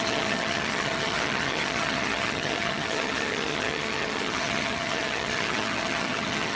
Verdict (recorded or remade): remade